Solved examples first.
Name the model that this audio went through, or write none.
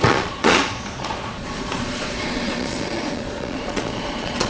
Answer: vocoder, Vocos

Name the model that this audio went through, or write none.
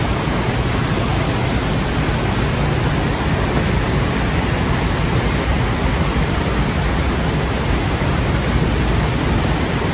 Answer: none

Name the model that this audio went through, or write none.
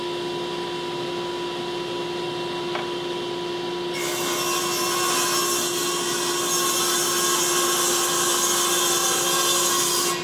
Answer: none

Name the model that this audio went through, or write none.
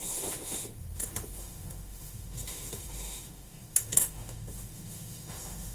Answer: autoencoder, DAC-VAE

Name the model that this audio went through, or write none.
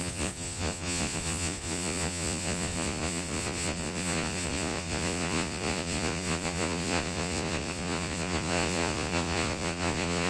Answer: vocoder, Vocos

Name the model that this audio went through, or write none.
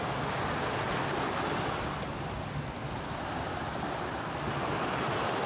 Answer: none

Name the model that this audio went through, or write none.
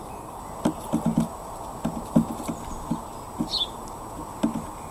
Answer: none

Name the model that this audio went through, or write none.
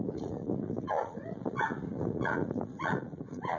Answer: vocoder, Vocos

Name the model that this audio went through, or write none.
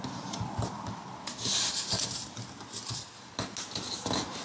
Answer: none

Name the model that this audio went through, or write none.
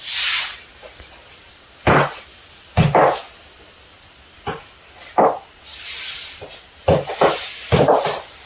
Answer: none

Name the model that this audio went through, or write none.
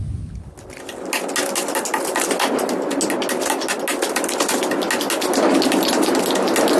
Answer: none